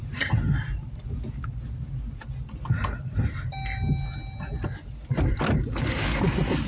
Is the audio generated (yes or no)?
no